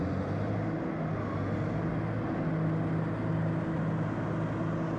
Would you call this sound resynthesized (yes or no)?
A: no